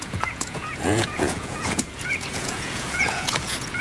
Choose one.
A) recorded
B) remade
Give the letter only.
B